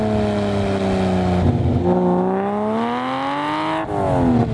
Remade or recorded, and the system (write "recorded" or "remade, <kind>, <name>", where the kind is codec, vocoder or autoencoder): recorded